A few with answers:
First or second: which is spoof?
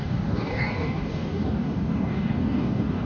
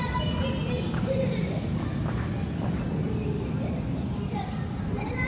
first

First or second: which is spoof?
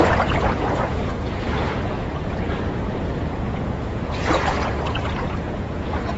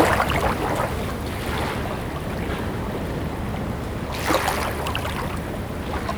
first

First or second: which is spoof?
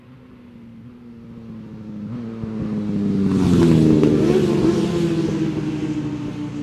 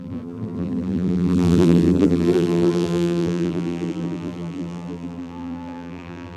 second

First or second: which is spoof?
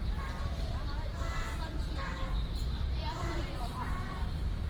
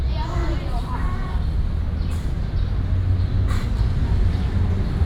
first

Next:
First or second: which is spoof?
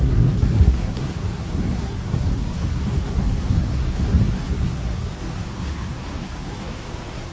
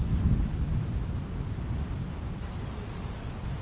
first